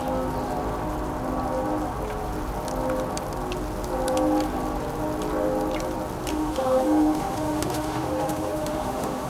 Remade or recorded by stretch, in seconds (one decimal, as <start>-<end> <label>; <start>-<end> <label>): 0.0-6.3 recorded; 6.3-9.3 remade